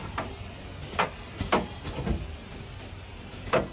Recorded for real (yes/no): yes